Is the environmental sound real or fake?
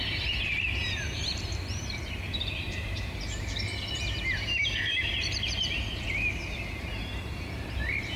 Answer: fake